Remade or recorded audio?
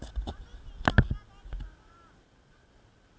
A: recorded